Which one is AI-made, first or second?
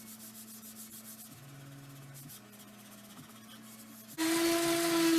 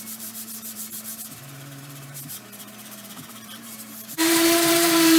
second